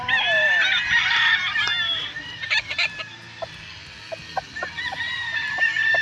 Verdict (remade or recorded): recorded